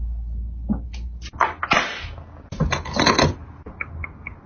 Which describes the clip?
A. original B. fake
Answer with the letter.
A